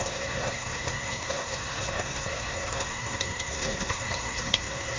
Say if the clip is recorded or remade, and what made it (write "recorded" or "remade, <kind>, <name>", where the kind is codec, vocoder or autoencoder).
remade, codec, SNAC